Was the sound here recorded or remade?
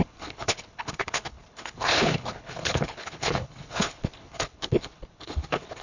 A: remade